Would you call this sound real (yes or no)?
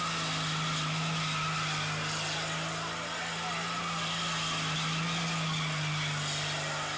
yes